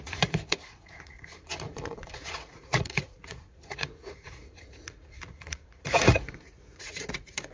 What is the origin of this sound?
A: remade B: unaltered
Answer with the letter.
A